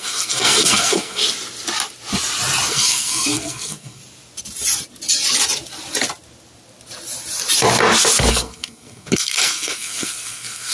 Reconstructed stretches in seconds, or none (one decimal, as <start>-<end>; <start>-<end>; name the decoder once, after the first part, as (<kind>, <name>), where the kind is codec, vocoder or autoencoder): 0.0-1.2 (codec, SNAC); 2.7-4.0; 8.3-10.7